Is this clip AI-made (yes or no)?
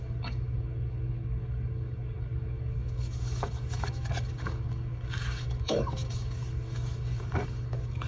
yes